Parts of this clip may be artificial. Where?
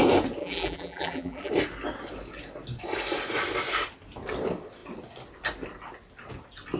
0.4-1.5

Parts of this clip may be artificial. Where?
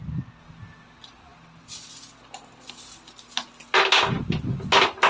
none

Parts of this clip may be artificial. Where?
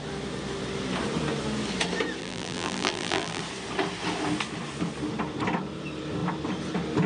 2.2-3.4